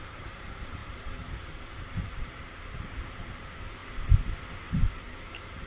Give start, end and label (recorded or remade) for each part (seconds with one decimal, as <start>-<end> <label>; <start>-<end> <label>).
0.0-3.8 remade; 3.8-4.7 recorded; 4.7-5.7 remade